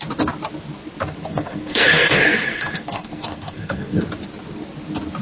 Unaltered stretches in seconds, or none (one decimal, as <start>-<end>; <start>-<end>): 0.0-1.2; 4.0-5.2